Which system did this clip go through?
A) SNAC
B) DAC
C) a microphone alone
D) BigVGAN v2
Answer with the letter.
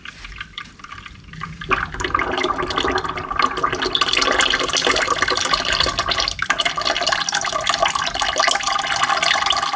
C